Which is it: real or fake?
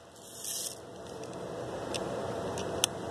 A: real